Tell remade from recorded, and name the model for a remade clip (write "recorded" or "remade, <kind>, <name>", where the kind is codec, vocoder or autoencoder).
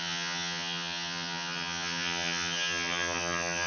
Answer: remade, vocoder, HiFi-GAN